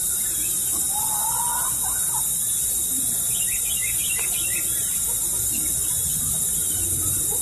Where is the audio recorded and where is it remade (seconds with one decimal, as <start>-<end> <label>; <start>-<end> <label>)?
0.0-7.4 recorded